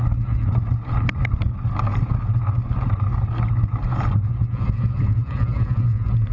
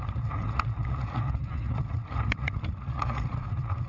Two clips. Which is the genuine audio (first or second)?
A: first